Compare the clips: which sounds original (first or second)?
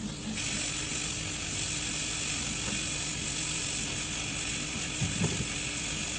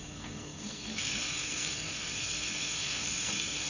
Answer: first